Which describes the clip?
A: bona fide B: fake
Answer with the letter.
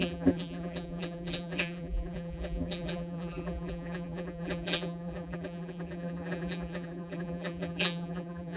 B